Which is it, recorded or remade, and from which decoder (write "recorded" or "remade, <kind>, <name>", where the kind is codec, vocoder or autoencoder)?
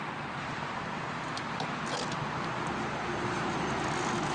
recorded